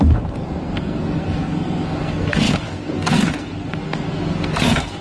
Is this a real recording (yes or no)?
no